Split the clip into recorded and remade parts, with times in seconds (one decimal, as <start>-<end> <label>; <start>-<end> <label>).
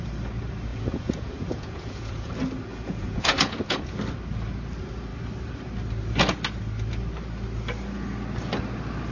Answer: 0.0-0.7 recorded; 0.7-2.3 remade; 2.3-2.7 recorded; 2.7-3.9 remade; 3.9-9.1 recorded